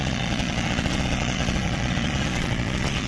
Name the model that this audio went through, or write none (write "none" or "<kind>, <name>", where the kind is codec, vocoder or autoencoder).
vocoder, Vocos